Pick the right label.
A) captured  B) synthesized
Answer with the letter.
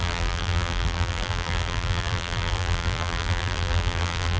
B